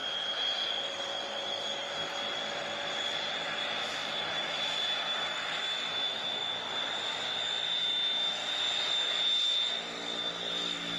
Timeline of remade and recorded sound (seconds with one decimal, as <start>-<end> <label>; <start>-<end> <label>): 0.0-4.2 recorded; 4.2-6.4 remade; 6.4-7.8 recorded; 7.8-8.4 remade; 8.4-11.0 recorded